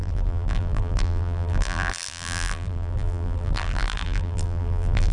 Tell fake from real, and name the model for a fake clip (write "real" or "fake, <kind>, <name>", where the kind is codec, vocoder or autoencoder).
fake, vocoder, BigVGAN v2